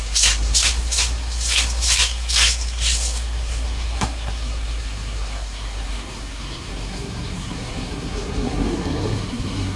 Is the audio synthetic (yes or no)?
yes